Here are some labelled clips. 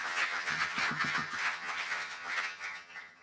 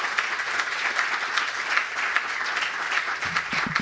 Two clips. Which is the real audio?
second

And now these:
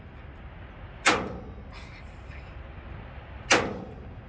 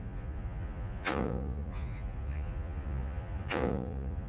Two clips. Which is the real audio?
first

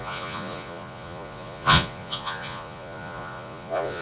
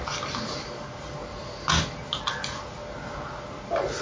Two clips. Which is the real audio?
second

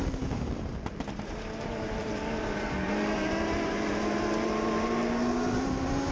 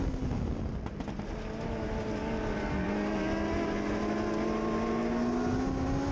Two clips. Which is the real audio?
second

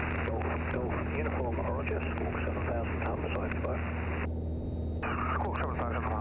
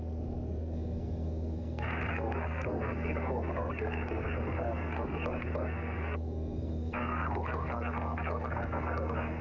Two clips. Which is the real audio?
first